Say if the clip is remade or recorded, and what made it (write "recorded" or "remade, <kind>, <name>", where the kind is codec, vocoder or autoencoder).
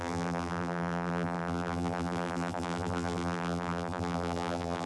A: remade, vocoder, BigVGAN v2